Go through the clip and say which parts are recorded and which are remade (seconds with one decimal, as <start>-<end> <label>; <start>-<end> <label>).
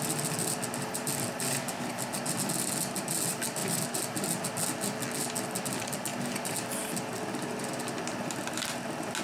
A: 0.0-9.2 recorded